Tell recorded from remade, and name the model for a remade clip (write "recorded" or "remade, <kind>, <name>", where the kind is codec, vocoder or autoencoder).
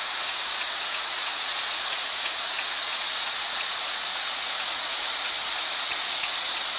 remade, vocoder, Vocos